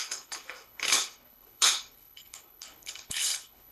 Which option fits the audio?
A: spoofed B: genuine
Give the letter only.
A